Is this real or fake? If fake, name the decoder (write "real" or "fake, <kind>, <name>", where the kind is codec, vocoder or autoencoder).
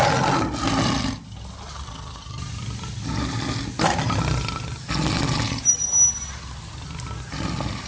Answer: real